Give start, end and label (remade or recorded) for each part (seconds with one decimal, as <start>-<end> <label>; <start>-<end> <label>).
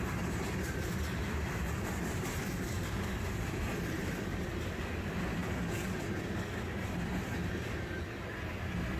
0.0-2.4 recorded; 2.4-3.2 remade; 3.2-9.0 recorded